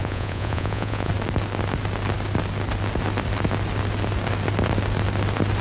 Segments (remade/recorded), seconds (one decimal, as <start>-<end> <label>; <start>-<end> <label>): 0.0-1.1 remade; 1.1-5.6 recorded